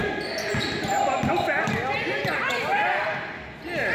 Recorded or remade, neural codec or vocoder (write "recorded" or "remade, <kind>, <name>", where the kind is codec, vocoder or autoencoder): recorded